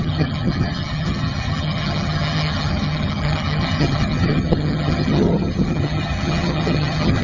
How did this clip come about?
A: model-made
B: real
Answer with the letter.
A